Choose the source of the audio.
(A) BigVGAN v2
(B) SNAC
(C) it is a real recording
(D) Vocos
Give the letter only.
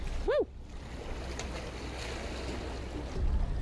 C